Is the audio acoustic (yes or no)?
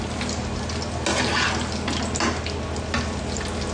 yes